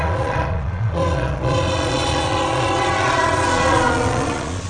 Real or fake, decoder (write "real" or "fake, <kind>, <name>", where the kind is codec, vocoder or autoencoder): fake, vocoder, Vocos